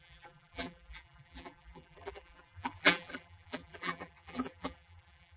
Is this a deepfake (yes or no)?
yes